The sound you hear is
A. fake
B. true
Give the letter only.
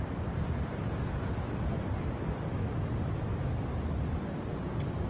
B